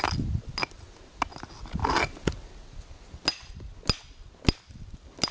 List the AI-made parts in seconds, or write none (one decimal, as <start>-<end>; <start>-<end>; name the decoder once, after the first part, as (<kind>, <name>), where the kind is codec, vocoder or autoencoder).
none